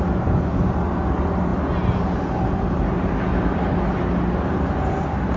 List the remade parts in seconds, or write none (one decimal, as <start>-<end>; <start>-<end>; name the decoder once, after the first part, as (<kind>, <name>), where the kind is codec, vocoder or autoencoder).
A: none